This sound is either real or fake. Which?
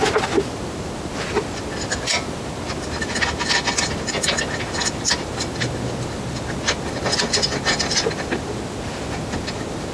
real